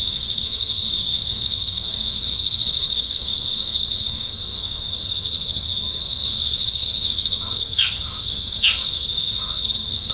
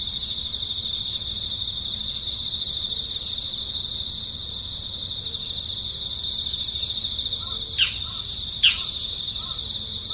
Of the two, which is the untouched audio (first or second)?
second